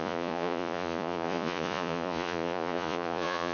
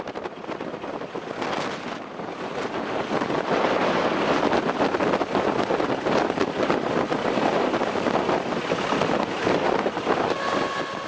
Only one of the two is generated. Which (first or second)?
first